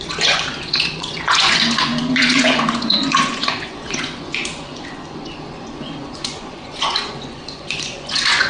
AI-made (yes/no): yes